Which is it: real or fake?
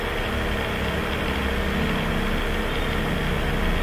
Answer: real